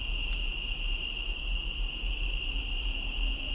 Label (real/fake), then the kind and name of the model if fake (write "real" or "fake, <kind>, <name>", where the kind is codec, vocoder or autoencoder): real